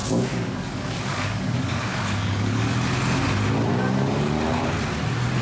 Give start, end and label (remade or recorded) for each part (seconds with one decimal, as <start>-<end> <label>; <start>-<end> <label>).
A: 0.0-2.7 remade; 2.7-3.7 recorded; 3.7-4.5 remade; 4.5-5.4 recorded